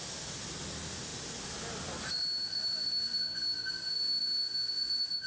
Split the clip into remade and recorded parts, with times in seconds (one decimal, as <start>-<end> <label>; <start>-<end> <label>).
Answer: 0.0-5.3 recorded